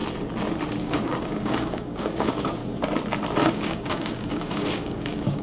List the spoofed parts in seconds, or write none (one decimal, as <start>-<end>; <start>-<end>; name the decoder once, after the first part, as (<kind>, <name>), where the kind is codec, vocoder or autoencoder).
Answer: 0.8-2.6 (codec, DAC); 3.5-5.4

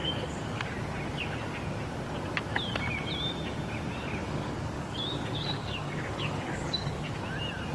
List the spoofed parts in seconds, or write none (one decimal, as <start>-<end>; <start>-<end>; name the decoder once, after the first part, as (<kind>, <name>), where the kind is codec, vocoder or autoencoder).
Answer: 0.0-0.6 (codec, DAC); 4.2-7.2

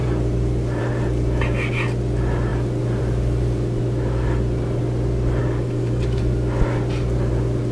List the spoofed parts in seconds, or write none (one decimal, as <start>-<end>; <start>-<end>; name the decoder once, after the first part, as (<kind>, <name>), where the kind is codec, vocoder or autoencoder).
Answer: 5.4-6.2 (codec, DAC)

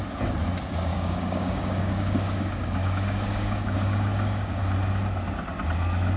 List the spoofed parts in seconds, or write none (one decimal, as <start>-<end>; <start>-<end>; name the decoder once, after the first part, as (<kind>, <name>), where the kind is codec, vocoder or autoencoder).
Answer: 0.9-4.6 (codec, DAC)